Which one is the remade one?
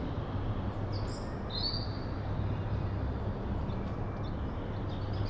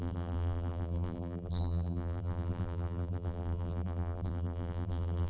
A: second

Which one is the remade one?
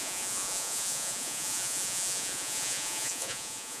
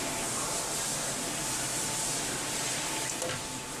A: first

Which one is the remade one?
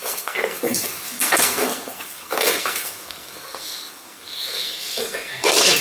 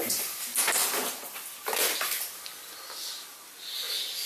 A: first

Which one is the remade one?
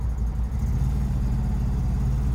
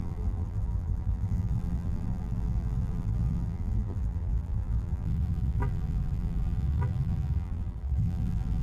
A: second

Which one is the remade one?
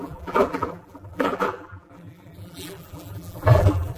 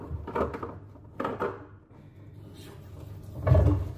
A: first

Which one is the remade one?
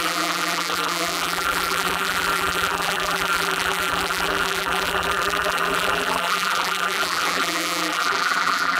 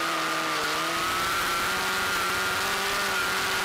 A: first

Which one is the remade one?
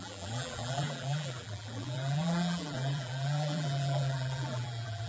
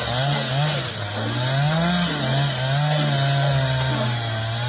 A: first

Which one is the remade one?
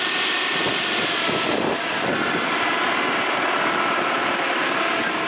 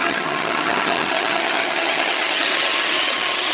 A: second